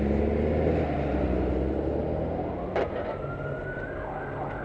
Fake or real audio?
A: real